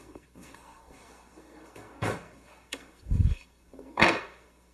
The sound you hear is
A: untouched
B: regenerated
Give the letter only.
B